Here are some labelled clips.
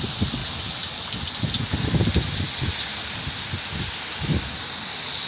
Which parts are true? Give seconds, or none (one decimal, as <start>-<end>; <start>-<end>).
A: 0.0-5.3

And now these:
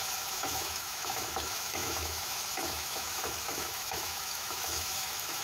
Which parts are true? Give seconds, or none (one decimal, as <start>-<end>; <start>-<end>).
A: none

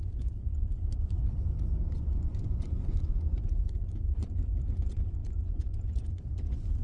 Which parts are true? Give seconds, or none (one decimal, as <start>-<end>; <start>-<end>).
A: 1.2-1.9

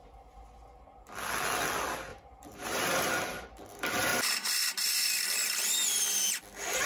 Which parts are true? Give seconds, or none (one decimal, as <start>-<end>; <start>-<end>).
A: 0.0-2.1; 3.2-4.1; 6.2-6.9